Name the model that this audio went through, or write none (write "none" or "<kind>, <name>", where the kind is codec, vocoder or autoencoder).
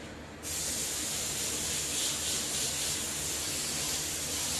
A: none